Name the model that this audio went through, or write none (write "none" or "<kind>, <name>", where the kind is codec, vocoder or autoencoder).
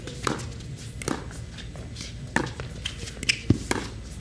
none